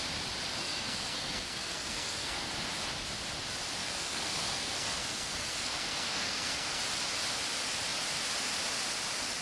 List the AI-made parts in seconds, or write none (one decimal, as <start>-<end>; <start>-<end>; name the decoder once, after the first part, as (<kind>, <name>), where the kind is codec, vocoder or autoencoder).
0.6-2.5 (codec, SNAC); 3.8-6.8